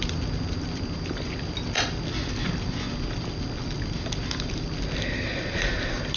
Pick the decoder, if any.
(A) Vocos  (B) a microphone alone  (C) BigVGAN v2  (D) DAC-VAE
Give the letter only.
B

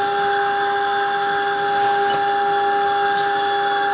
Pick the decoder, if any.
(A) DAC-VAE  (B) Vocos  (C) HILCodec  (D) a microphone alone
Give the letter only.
D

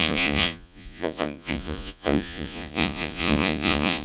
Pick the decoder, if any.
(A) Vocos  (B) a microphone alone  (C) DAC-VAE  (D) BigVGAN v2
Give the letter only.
A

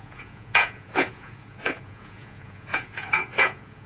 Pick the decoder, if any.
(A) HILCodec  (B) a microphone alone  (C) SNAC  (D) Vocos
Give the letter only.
D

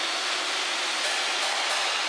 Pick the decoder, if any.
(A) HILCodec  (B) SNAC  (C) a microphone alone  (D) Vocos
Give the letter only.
C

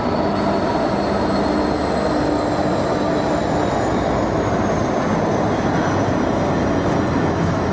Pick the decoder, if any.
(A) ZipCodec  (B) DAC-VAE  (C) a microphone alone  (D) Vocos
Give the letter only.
C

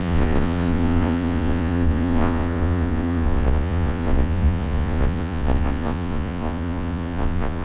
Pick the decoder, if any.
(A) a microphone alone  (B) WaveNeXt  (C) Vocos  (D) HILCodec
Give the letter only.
C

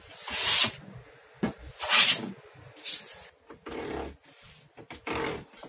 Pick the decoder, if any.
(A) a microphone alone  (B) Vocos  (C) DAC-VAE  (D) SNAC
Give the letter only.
A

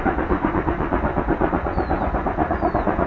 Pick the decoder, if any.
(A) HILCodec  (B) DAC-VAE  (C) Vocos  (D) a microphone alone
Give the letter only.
C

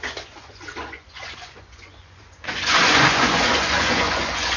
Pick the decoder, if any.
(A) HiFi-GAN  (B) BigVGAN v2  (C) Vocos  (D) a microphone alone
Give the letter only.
C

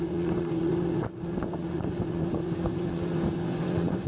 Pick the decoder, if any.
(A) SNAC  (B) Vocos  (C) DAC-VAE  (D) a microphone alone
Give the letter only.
B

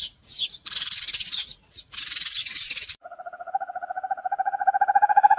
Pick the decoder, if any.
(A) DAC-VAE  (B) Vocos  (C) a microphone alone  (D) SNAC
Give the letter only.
B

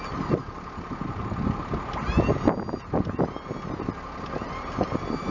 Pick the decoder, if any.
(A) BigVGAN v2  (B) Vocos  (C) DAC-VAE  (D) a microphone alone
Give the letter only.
D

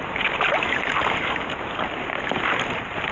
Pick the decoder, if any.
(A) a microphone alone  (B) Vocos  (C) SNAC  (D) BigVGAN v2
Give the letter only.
A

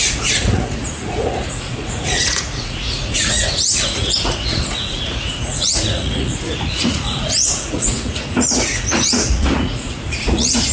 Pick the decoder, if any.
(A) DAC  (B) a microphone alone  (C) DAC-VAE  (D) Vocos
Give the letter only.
D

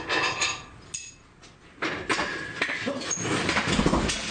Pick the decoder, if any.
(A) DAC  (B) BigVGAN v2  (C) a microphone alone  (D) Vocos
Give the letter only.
C